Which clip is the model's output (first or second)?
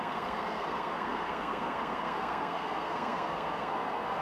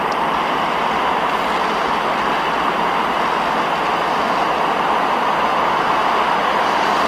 first